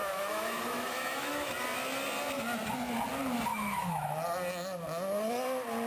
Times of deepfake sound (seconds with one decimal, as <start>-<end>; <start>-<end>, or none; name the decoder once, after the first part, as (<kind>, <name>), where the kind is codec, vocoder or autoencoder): 0.0-1.5 (autoencoder, DAC-VAE); 3.5-4.1